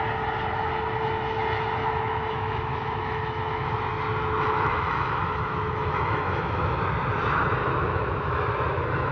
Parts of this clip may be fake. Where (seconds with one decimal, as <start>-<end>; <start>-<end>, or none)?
1.8-6.8; 7.6-9.1